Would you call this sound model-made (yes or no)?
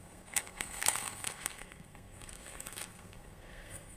yes